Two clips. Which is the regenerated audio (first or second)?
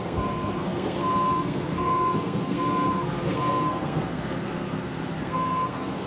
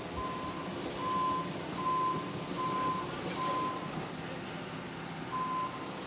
first